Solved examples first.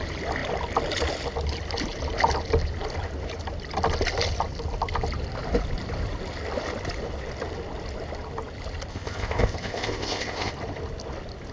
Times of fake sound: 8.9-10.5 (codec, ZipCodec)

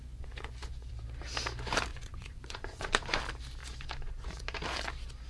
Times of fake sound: 0.0-0.9 (vocoder, Vocos); 1.9-3.2; 3.6-4.4

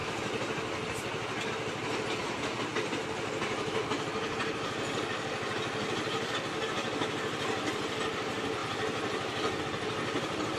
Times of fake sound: none